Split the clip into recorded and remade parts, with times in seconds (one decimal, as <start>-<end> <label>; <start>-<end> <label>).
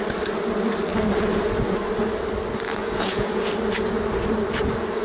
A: 0.0-2.8 recorded; 2.8-3.5 remade; 3.5-5.0 recorded